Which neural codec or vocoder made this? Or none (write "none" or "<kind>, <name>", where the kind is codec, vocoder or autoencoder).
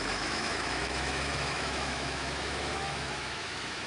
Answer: autoencoder, DAC-VAE